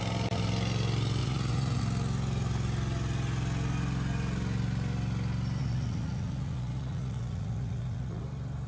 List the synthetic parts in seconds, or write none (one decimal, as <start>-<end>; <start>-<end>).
1.2-1.8; 5.6-8.2